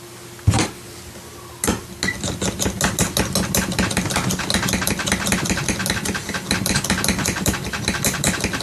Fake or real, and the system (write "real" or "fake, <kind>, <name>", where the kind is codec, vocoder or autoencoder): real